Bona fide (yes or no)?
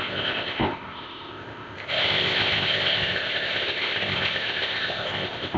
no